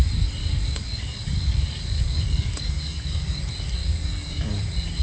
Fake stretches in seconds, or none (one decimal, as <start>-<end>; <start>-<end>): 0.4-3.4; 3.8-4.6